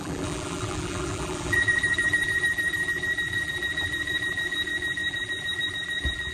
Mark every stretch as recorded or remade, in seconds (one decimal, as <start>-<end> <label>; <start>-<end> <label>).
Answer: 0.0-6.3 remade